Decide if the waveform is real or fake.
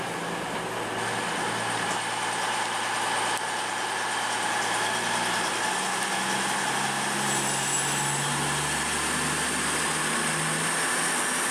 real